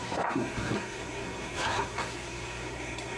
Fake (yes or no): yes